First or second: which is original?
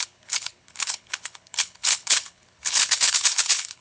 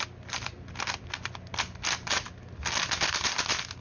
second